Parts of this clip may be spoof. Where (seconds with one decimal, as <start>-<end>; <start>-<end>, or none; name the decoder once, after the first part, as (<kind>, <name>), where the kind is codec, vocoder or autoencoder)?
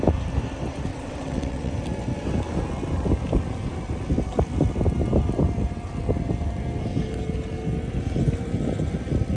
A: 0.9-1.7 (vocoder, WaveNeXt)